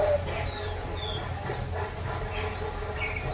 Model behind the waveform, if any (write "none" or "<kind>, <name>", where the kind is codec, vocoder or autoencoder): none